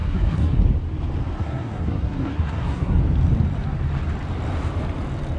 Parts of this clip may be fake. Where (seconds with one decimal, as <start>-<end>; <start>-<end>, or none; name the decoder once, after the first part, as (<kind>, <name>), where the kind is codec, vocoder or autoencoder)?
0.0-0.6 (codec, SNAC); 1.4-3.0